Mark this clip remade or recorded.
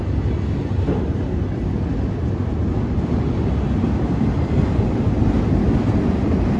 recorded